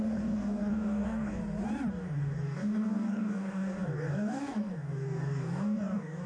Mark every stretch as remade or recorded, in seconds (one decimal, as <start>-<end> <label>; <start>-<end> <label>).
0.0-1.4 remade; 1.4-1.9 recorded; 1.9-6.3 remade